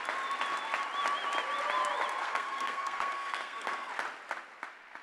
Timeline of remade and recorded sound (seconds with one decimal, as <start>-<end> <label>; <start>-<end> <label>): 0.0-2.2 recorded; 2.2-3.9 remade; 3.9-5.0 recorded